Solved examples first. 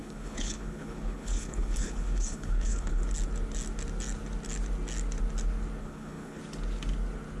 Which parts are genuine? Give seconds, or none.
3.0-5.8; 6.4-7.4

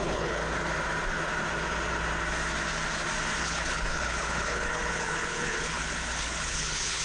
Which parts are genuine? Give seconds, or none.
0.4-3.4